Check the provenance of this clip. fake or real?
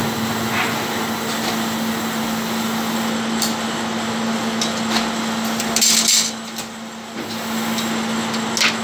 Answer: real